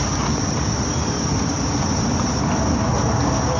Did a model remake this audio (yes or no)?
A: no